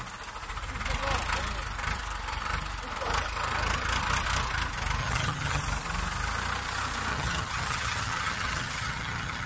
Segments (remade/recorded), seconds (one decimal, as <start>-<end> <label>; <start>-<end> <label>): 0.0-5.0 recorded; 5.0-5.6 remade; 5.6-7.1 recorded; 7.1-9.5 remade